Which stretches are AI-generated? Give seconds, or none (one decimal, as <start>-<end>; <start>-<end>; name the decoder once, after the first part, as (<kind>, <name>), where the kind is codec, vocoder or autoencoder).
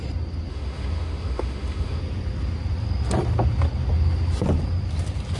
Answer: 0.5-2.0 (autoencoder, DAC-VAE)